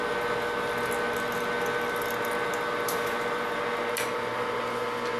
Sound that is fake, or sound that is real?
real